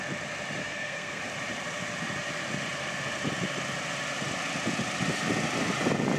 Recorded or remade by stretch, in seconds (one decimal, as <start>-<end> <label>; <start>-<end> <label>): 0.0-0.6 recorded; 0.6-1.2 remade; 1.2-6.2 recorded